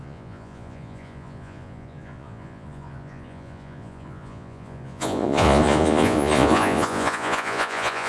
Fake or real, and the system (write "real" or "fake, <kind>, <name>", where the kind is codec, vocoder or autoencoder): fake, vocoder, Vocos